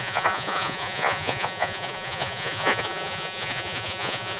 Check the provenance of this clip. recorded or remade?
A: remade